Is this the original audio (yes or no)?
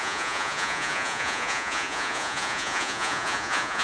no